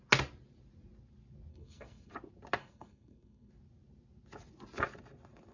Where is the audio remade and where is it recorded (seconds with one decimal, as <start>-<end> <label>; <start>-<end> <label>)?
0.0-1.5 recorded; 1.5-2.1 remade; 2.1-2.6 recorded; 2.6-3.5 remade; 3.5-5.5 recorded

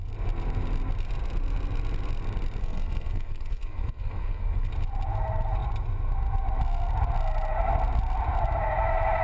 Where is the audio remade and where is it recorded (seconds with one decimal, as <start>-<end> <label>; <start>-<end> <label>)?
0.0-2.6 recorded; 2.6-4.7 remade; 4.7-9.2 recorded

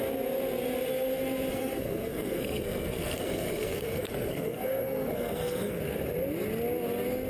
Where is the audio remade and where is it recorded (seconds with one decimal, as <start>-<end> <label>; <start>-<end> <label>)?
0.0-1.5 recorded; 1.5-5.8 remade; 5.8-7.3 recorded

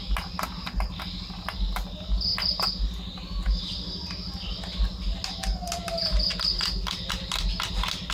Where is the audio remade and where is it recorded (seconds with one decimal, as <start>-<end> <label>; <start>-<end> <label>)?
0.0-8.1 recorded

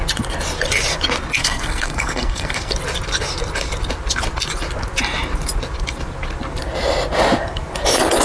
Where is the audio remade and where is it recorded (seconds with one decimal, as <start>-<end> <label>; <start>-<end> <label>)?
0.0-1.4 recorded; 1.4-2.7 remade; 2.7-8.2 recorded

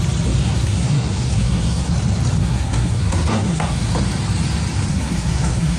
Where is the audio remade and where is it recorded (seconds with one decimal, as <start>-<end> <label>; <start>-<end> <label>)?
0.0-0.4 recorded; 0.4-1.9 remade; 1.9-2.4 recorded; 2.4-3.9 remade; 3.9-4.9 recorded; 4.9-5.8 remade